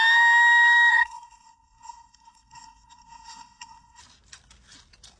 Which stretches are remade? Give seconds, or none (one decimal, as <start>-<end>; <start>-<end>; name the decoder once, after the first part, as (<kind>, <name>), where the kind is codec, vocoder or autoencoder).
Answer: 0.9-4.0 (codec, SNAC)